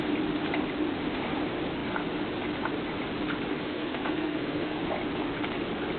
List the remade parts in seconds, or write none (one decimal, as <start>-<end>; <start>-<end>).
3.5-4.8